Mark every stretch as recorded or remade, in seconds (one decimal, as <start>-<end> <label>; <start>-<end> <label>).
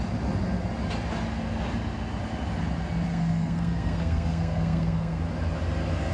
0.0-3.1 recorded; 3.1-5.2 remade; 5.2-6.1 recorded